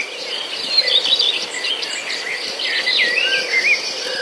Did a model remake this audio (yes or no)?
yes